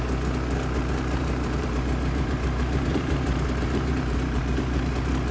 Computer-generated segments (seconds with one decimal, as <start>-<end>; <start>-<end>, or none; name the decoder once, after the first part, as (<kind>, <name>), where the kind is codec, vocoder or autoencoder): 1.2-4.4 (vocoder, BigVGAN v2)